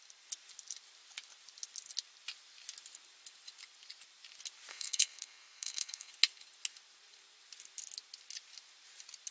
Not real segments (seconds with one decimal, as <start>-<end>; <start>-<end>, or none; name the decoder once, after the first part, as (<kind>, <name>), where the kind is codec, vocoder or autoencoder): 4.7-6.1 (codec, SNAC)